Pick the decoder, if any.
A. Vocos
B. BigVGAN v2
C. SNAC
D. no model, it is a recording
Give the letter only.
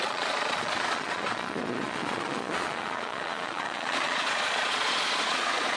A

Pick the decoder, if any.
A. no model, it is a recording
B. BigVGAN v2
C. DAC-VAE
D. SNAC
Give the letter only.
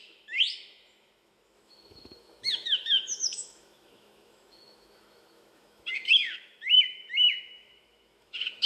C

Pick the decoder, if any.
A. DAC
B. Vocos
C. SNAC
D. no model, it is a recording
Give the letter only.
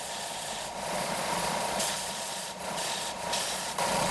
B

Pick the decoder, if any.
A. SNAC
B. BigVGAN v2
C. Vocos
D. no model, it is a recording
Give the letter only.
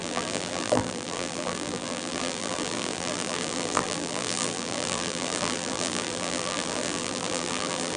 B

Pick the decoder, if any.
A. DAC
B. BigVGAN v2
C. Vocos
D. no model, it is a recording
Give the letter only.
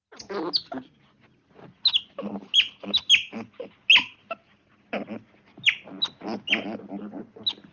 D